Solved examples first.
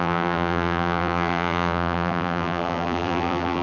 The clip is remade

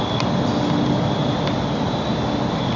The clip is recorded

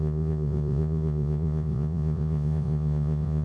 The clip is remade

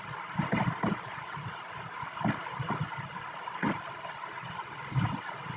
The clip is recorded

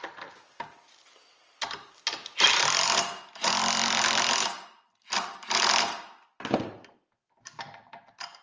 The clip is recorded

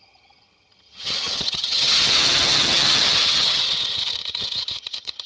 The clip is remade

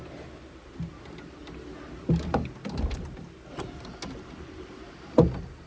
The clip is recorded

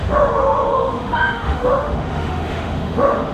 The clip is remade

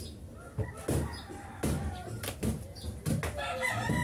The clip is recorded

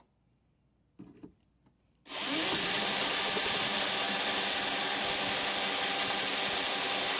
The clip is recorded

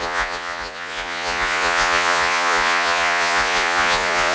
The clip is remade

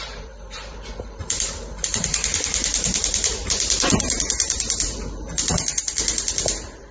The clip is remade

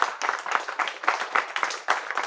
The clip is recorded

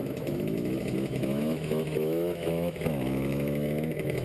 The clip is remade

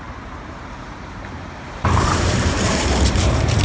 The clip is remade